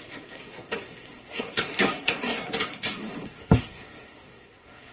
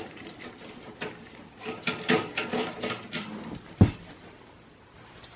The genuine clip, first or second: second